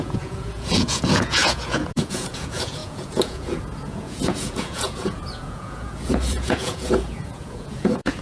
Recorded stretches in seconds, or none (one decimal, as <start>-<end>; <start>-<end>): none